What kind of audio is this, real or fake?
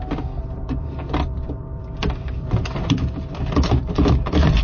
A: fake